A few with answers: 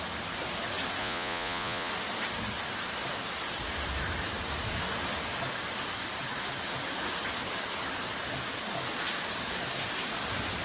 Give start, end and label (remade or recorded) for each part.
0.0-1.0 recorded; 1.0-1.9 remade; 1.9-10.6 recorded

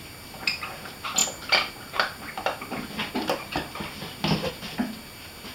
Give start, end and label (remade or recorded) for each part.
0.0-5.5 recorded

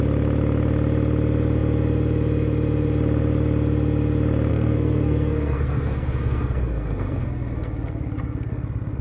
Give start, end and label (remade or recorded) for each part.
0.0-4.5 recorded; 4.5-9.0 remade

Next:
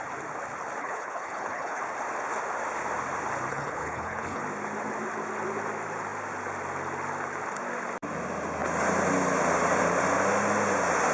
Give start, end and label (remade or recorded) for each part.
0.0-0.8 recorded; 0.8-1.8 remade; 1.8-3.5 recorded; 3.5-4.4 remade; 4.4-11.1 recorded